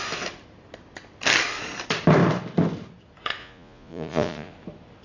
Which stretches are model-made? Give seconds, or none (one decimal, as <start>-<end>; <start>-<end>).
3.4-4.5